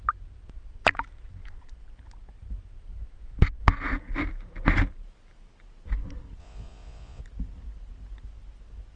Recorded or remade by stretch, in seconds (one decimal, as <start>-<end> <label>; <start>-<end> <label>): 0.0-6.4 recorded; 6.4-7.2 remade; 7.2-9.0 recorded